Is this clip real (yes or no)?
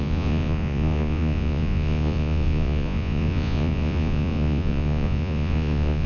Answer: no